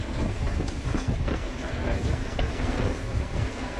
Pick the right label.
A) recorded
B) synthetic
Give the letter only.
B